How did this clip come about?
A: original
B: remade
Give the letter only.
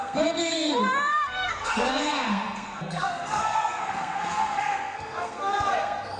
B